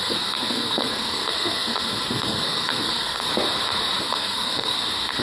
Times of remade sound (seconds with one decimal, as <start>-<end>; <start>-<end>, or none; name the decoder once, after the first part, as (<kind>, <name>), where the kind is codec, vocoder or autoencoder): 0.0-3.3 (codec, SNAC); 4.0-5.2